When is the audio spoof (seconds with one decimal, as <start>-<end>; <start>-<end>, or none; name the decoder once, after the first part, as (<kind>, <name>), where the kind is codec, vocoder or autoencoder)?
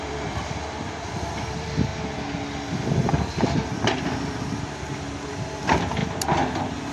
0.0-1.9 (vocoder, BigVGAN v2); 4.5-6.0